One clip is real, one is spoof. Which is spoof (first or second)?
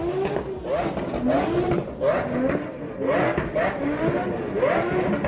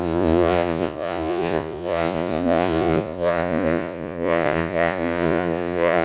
second